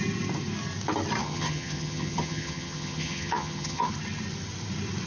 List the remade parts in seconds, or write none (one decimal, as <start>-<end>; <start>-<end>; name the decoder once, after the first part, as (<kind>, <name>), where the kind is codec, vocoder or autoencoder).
1.2-3.9 (vocoder, HiFi-GAN)